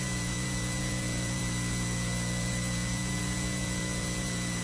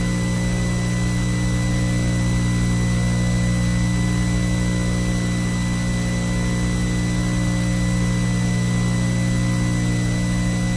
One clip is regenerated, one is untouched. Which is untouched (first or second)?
second